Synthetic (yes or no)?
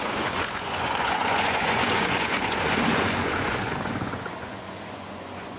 yes